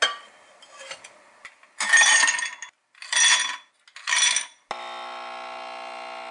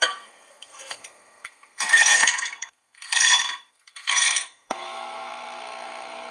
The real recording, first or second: first